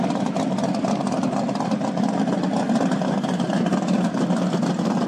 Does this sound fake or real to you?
real